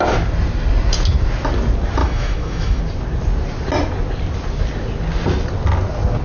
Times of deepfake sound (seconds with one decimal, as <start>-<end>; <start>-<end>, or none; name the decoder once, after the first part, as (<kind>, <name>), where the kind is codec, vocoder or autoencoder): 2.0-2.8 (autoencoder, DAC-VAE)